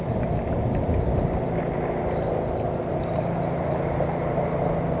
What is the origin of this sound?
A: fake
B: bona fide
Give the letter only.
B